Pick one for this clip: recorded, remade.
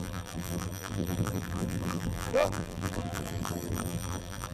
remade